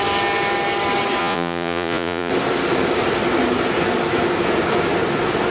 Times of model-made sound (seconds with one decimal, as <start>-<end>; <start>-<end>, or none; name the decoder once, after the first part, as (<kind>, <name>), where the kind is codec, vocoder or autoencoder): 1.2-2.3 (vocoder, Vocos)